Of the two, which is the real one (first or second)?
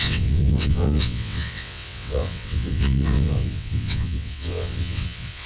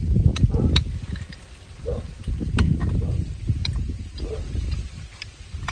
second